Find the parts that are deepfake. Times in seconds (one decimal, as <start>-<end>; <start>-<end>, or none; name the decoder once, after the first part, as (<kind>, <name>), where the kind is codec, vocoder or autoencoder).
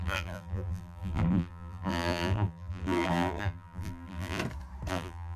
0.0-4.4 (vocoder, BigVGAN v2); 4.9-5.4